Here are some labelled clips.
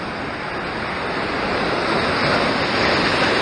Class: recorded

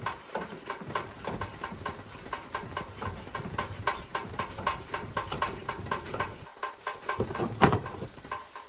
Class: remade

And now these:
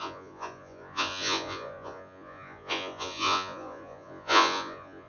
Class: remade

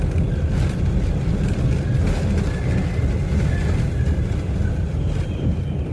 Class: recorded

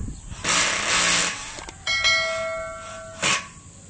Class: recorded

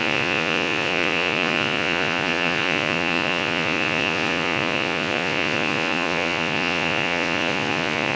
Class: remade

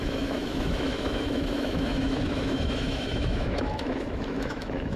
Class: remade